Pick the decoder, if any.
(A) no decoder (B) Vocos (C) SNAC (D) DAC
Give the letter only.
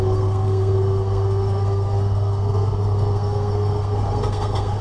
C